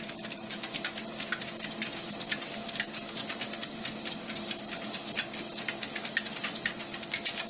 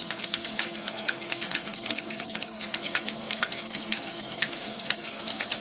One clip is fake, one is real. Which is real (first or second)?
first